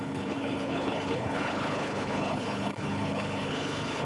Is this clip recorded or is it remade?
remade